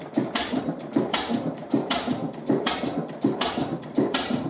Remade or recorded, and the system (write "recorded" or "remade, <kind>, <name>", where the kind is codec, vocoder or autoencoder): remade, vocoder, BigVGAN v2